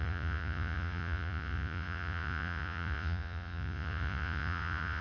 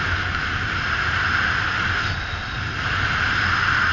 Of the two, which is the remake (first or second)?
first